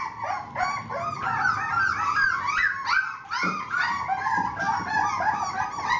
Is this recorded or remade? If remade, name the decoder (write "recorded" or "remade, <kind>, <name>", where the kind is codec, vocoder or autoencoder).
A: recorded